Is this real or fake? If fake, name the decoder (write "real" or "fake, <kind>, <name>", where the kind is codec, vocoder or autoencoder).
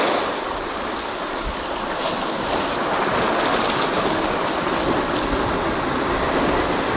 real